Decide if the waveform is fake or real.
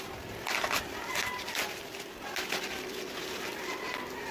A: real